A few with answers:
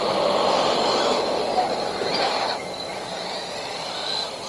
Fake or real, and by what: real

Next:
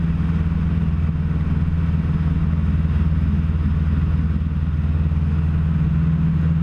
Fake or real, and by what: real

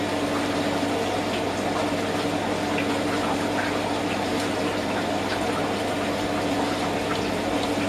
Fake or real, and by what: real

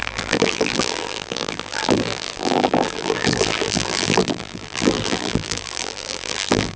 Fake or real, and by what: fake, vocoder, BigVGAN v2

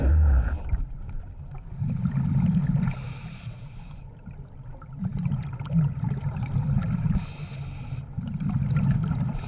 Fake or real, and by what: real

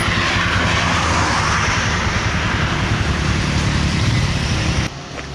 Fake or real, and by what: real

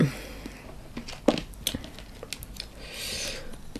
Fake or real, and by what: real